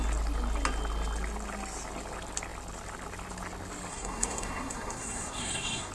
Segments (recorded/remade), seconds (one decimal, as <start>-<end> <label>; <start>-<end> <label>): 0.0-3.9 recorded; 3.9-5.9 remade